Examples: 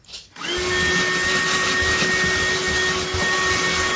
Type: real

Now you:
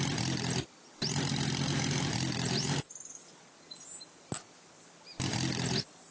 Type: real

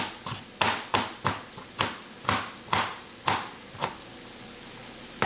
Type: real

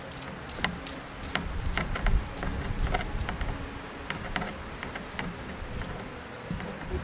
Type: real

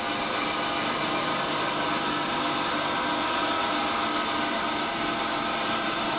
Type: real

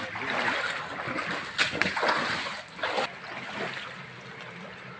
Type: real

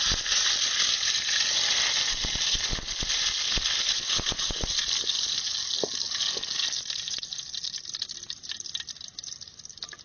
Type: real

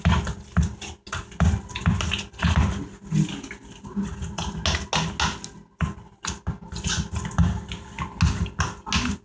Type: real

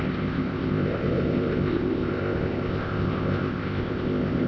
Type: fake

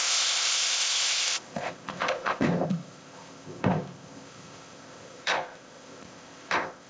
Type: fake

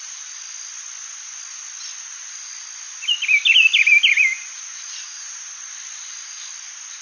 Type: real